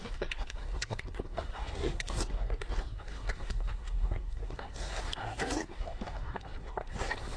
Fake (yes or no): yes